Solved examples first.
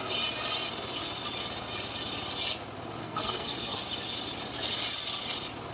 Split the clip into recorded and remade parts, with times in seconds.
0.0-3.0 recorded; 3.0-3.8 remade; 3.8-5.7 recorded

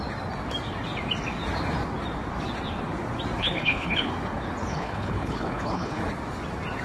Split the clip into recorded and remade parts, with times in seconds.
0.0-3.4 recorded; 3.4-4.1 remade; 4.1-4.7 recorded; 4.7-6.0 remade; 6.0-6.8 recorded

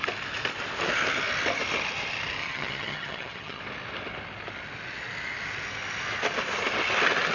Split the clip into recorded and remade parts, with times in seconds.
0.0-2.4 recorded; 2.4-3.6 remade; 3.6-7.3 recorded

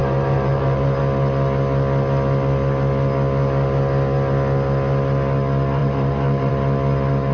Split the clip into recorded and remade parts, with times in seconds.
0.0-1.0 remade; 1.0-5.8 recorded; 5.8-6.5 remade; 6.5-7.3 recorded

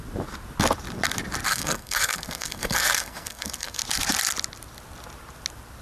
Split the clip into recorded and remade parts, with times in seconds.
0.0-1.5 recorded; 1.5-3.8 remade; 3.8-5.8 recorded

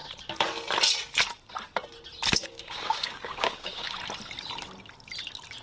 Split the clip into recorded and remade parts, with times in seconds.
0.0-2.3 recorded; 2.3-4.0 remade; 4.0-5.6 recorded

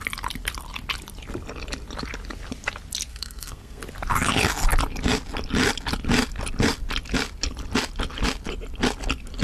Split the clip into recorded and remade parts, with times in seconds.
0.0-3.1 recorded; 3.1-3.8 remade; 3.8-9.4 recorded